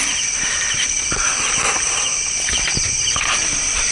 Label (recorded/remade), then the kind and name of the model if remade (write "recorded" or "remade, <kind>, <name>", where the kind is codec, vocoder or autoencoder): recorded